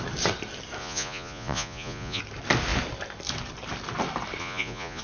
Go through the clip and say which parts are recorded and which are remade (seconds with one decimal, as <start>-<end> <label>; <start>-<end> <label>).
0.0-0.8 recorded; 0.8-2.2 remade; 2.2-4.4 recorded; 4.4-5.0 remade